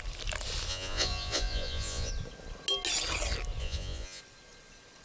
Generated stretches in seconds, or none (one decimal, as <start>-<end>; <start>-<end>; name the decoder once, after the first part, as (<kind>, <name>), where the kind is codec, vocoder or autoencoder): 0.7-2.1 (vocoder, Vocos); 3.6-4.2